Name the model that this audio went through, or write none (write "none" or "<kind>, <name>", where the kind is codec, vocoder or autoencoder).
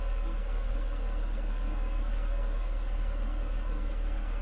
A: codec, SNAC